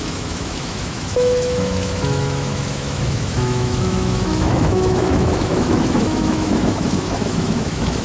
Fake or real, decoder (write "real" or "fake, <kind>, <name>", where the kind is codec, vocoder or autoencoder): fake, autoencoder, DAC-VAE